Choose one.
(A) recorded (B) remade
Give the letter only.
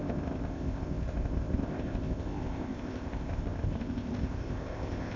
B